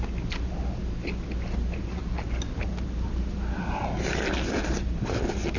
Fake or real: real